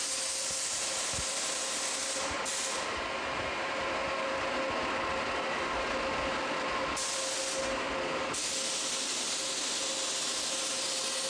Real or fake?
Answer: real